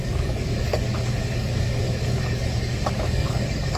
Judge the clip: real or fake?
fake